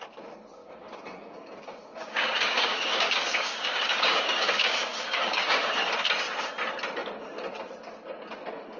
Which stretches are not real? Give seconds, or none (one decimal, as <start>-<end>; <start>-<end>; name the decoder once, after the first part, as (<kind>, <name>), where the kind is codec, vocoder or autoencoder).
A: 0.6-5.9 (codec, DAC)